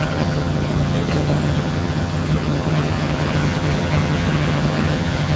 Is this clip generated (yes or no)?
yes